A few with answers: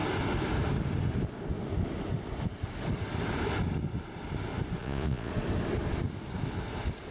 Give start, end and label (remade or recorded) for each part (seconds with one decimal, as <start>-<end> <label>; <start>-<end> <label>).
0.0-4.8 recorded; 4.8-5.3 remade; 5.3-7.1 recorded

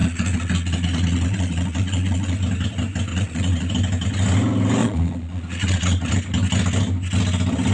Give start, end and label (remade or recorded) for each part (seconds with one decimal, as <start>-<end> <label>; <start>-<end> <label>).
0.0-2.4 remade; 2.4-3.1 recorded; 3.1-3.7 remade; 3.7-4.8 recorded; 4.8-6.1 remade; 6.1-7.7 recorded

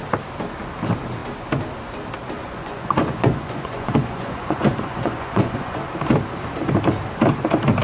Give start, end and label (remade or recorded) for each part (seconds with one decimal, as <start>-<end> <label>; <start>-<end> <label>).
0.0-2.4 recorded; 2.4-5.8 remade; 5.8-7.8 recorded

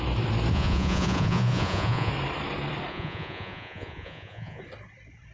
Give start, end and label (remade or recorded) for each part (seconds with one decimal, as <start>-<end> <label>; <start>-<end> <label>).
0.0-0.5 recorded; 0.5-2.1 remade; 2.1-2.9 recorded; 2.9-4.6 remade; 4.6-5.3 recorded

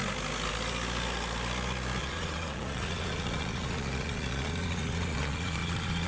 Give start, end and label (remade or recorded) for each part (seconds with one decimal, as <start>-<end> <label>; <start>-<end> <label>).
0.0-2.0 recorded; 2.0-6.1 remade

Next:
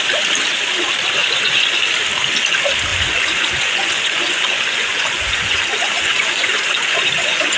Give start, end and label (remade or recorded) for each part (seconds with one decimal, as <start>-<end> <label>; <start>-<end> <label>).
0.0-1.2 recorded; 1.2-1.8 remade; 1.8-2.9 recorded; 2.9-7.6 remade

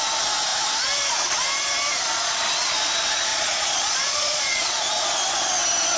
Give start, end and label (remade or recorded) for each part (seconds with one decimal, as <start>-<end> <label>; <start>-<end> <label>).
0.0-3.3 recorded; 3.3-4.9 remade; 4.9-6.0 recorded

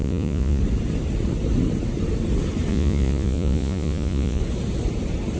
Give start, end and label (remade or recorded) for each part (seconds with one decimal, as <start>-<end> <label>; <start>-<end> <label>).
0.0-0.6 remade; 0.6-2.7 recorded; 2.7-4.4 remade; 4.4-5.4 recorded